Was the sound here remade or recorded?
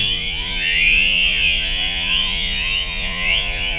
remade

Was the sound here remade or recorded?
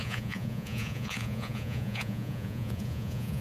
remade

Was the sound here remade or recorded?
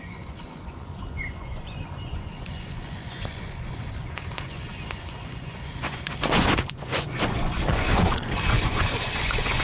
remade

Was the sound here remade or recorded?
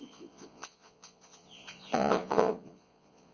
remade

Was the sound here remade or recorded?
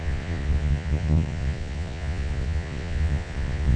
remade